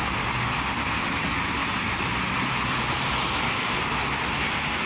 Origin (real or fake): real